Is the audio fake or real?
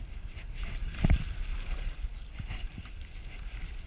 real